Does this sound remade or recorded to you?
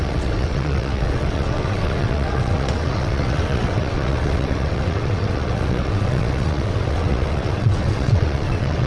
remade